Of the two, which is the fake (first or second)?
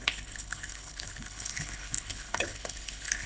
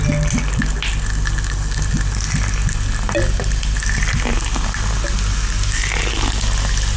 first